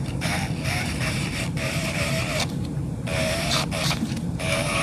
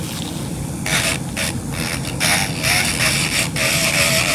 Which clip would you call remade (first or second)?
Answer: first